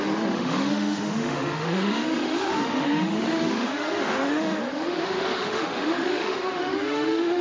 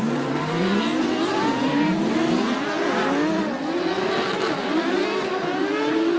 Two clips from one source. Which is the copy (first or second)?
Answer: first